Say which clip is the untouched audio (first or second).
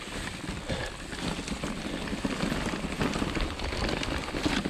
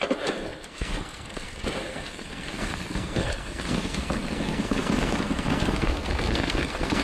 first